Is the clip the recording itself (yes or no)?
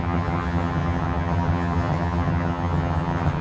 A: no